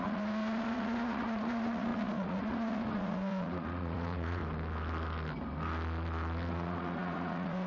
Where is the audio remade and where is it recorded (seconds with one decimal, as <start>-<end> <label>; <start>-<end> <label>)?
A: 0.0-4.4 remade; 4.4-6.5 recorded; 6.5-7.7 remade